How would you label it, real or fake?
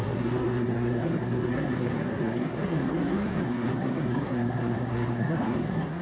fake